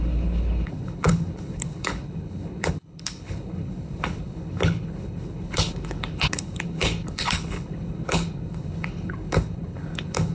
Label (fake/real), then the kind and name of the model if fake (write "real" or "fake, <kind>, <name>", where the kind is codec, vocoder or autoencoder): fake, codec, HILCodec